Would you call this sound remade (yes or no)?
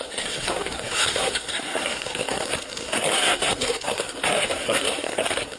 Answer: yes